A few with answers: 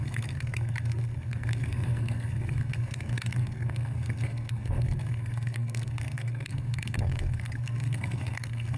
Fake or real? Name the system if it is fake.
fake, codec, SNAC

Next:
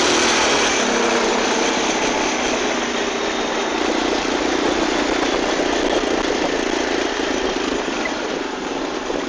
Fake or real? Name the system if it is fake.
real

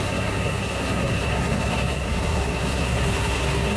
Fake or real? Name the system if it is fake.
fake, codec, SNAC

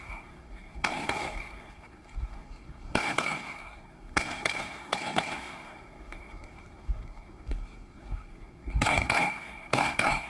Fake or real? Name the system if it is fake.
fake, codec, SNAC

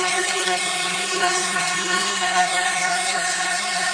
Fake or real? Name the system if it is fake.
fake, codec, SNAC